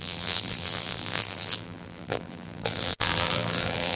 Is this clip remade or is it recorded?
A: remade